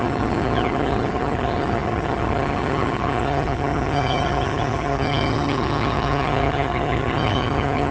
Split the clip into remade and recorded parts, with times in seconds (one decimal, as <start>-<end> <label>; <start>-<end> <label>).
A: 0.0-7.9 remade